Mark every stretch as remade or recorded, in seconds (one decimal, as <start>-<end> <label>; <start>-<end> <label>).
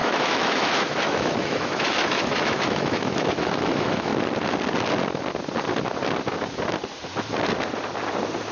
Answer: 0.0-4.1 remade; 4.1-8.5 recorded